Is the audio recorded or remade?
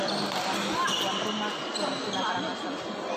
recorded